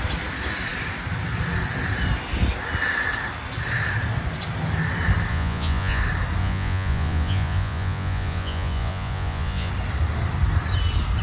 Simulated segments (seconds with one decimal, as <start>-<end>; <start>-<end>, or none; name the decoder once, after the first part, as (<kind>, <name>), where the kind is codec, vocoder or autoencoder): 5.3-6.0 (vocoder, Vocos); 6.4-9.7